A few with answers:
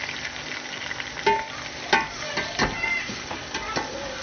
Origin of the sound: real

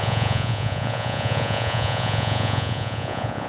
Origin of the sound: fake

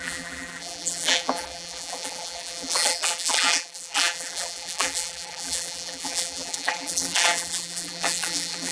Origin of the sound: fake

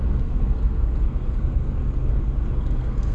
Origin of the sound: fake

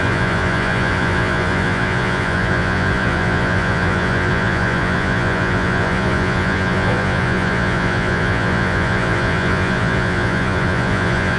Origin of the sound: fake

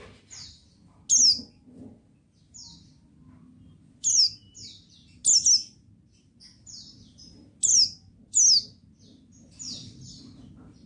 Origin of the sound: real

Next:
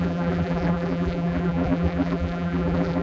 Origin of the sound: fake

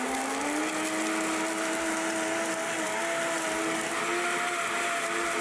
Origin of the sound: real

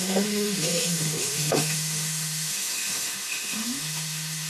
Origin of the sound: fake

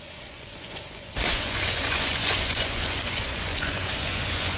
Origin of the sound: fake